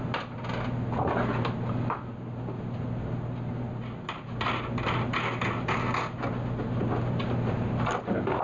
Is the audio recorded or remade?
recorded